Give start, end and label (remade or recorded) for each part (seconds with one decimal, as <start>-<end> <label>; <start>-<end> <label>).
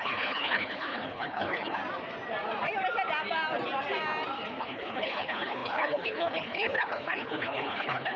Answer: 0.0-1.8 remade; 1.8-4.6 recorded; 4.6-8.2 remade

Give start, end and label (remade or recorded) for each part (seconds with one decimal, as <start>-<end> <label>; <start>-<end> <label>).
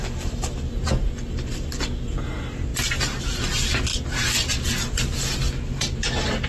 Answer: 0.0-6.5 recorded